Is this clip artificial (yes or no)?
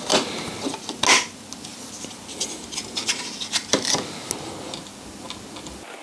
no